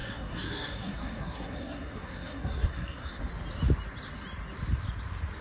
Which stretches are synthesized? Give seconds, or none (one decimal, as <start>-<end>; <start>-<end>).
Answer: 0.0-3.2